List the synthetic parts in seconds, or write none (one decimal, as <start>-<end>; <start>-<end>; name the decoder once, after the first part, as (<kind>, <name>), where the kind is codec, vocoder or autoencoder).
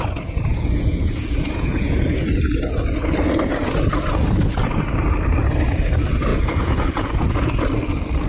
0.5-2.2 (vocoder, Vocos); 6.3-7.4